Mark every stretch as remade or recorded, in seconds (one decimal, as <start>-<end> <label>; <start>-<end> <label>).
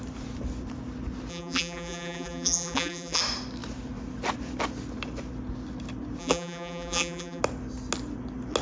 0.0-1.3 recorded; 1.3-3.2 remade; 3.2-6.2 recorded; 6.2-7.4 remade; 7.4-8.6 recorded